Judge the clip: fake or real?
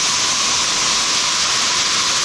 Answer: real